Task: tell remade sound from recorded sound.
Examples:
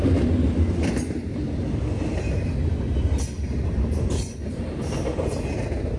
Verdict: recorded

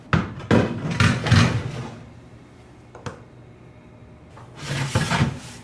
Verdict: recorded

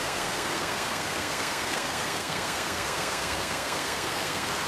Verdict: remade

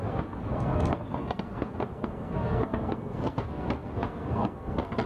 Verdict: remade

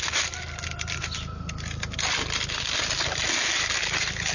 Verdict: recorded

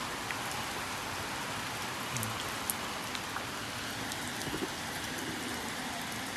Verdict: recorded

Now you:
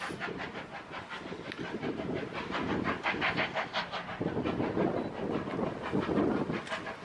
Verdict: recorded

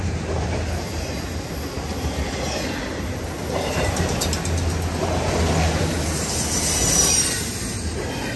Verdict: recorded